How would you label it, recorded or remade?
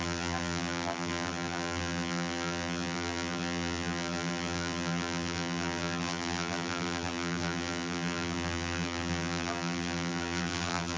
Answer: remade